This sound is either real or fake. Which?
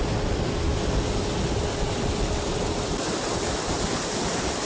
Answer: real